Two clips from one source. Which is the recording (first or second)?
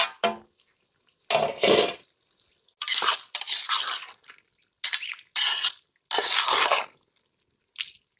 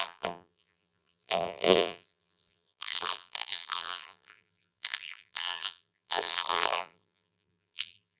first